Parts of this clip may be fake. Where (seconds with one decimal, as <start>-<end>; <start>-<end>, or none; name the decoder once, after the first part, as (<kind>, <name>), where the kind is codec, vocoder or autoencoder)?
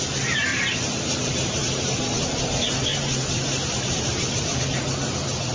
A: 0.5-1.8 (vocoder, BigVGAN v2); 2.9-4.6